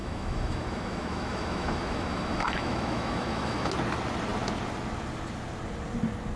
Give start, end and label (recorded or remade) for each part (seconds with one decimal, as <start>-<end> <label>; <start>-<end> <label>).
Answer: 0.0-3.7 remade; 3.7-6.4 recorded